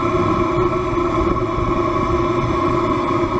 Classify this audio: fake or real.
real